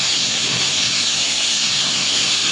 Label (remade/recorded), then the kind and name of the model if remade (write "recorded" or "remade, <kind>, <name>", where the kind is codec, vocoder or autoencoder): remade, codec, SNAC